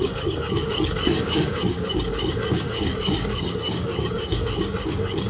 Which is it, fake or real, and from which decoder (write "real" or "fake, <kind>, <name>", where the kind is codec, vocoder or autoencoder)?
fake, codec, DAC